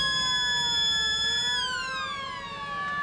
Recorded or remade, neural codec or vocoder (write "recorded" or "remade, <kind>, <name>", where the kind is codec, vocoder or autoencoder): recorded